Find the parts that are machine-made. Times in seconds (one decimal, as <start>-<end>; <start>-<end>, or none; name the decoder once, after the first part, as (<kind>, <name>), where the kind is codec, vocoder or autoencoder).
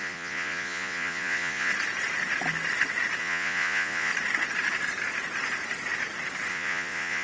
0.0-1.7 (vocoder, Vocos); 3.2-4.1; 6.5-7.2